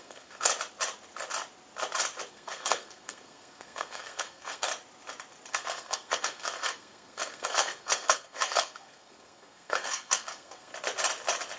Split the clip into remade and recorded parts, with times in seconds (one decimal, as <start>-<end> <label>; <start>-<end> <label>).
0.0-0.5 remade; 0.5-2.3 recorded; 2.3-4.7 remade; 4.7-5.5 recorded; 5.5-10.7 remade; 10.7-11.6 recorded